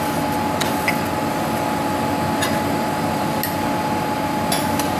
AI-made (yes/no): no